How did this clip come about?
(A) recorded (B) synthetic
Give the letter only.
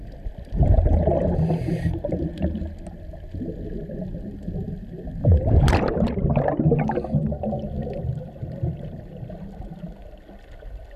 A